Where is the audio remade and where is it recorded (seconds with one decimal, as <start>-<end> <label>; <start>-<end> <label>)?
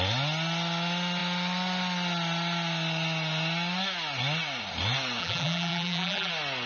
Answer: 0.0-5.2 recorded; 5.2-6.3 remade; 6.3-6.7 recorded